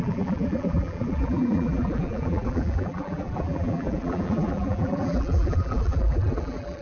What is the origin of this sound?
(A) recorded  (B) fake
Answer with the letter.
B